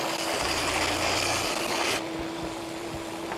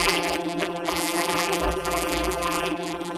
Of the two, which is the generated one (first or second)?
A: second